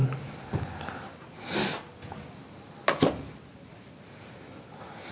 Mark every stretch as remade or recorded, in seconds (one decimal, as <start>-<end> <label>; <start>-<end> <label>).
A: 0.0-5.1 recorded